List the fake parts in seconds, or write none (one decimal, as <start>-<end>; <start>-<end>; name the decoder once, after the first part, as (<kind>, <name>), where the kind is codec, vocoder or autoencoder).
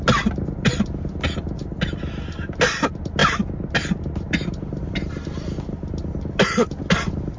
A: none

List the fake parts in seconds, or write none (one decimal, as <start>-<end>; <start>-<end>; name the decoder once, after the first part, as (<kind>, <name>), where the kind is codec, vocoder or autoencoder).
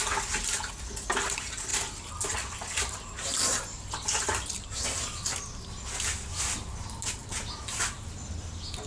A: none